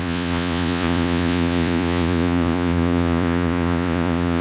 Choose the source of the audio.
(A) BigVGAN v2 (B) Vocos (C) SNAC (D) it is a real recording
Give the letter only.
B